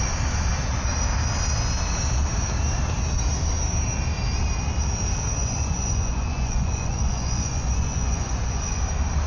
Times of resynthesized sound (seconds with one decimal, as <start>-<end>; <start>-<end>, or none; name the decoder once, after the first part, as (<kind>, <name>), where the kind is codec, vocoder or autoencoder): 5.4-8.8 (vocoder, Vocos)